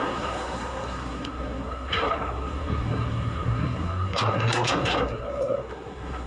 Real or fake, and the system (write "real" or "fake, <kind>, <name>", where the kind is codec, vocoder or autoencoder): fake, codec, SNAC